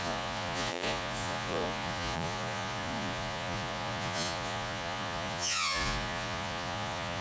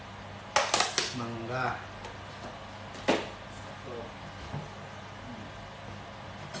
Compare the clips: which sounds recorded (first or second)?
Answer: second